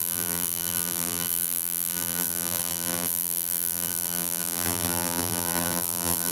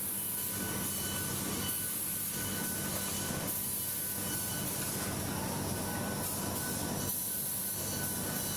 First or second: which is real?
second